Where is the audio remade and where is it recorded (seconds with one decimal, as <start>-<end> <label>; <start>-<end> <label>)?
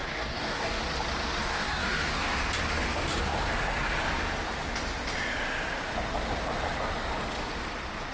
0.0-0.8 remade; 0.8-1.4 recorded; 1.4-2.4 remade; 2.4-8.1 recorded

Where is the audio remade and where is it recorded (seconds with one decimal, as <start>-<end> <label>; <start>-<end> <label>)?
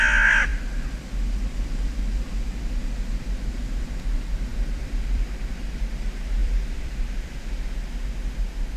0.0-4.5 recorded; 4.5-5.6 remade; 5.6-6.4 recorded; 6.4-7.6 remade; 7.6-8.8 recorded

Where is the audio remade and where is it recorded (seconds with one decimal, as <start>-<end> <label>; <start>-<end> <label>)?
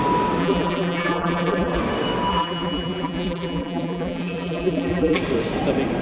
0.0-0.4 recorded; 0.4-1.8 remade; 1.8-2.3 recorded; 2.3-5.2 remade; 5.2-6.0 recorded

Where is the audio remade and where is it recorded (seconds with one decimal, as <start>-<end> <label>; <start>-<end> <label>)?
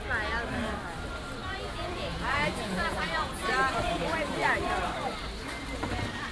0.0-1.4 recorded; 1.4-3.4 remade; 3.4-6.3 recorded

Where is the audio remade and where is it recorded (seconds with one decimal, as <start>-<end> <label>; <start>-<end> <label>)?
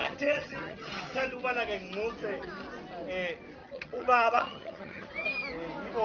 0.0-1.0 remade; 1.0-3.6 recorded; 3.6-5.1 remade; 5.1-6.0 recorded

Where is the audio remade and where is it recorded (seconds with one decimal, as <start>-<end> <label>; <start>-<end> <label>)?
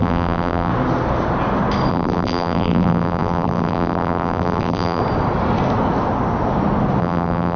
0.0-0.7 remade; 0.7-1.9 recorded; 1.9-5.0 remade; 5.0-7.0 recorded; 7.0-7.6 remade